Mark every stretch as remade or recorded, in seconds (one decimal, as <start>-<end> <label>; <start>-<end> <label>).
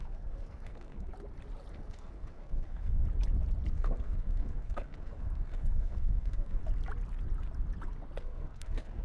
0.0-1.1 remade; 1.1-1.7 recorded; 1.7-3.0 remade; 3.0-3.7 recorded; 3.7-6.6 remade; 6.6-8.2 recorded; 8.2-9.0 remade